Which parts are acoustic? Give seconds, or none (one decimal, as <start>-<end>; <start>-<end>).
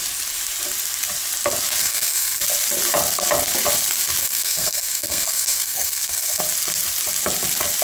0.0-1.8; 2.4-4.2; 6.4-7.8